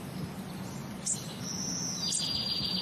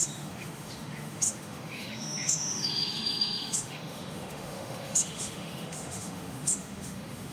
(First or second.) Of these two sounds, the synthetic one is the second